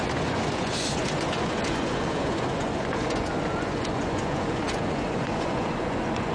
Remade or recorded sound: remade